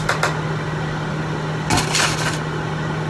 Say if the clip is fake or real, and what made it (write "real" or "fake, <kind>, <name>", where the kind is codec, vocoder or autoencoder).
real